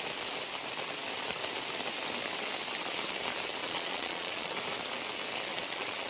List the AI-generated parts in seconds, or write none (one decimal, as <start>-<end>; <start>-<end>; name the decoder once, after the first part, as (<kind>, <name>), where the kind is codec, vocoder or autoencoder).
3.6-4.5 (vocoder, Vocos); 5.5-6.1